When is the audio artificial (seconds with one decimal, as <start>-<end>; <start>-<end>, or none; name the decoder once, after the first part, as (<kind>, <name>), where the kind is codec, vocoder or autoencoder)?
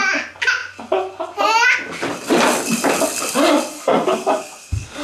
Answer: 3.7-5.0 (codec, SNAC)